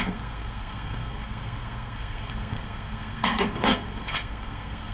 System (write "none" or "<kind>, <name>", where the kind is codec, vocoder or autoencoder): codec, SNAC